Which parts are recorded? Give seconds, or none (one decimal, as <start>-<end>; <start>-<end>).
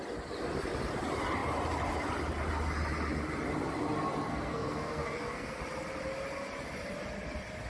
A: 0.0-4.3; 5.6-7.7